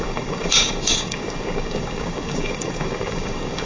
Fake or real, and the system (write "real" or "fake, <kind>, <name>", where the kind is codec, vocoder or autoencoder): fake, codec, DAC